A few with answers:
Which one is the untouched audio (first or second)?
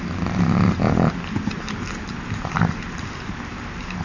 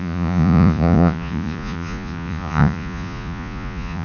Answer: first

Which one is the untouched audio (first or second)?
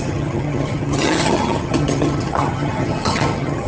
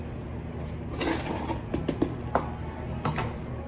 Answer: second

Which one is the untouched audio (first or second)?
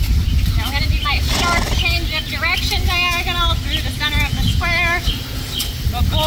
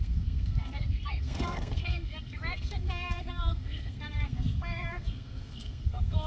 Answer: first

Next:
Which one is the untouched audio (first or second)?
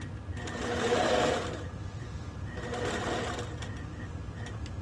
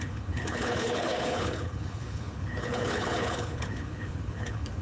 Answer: first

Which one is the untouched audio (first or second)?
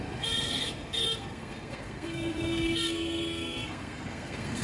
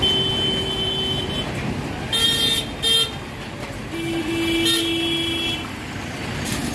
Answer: second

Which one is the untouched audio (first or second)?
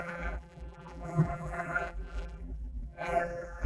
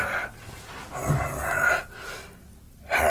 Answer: second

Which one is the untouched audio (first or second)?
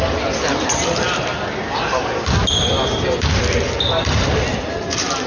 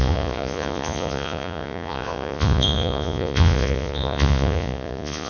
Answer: first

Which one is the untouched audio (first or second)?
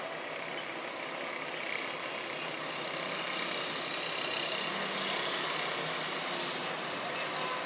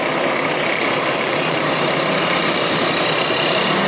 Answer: first